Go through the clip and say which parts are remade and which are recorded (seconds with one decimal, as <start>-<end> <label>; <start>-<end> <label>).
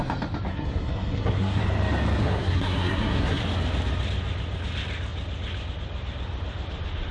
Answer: 0.0-0.5 recorded; 0.5-1.6 remade; 1.6-2.2 recorded; 2.2-3.4 remade; 3.4-7.1 recorded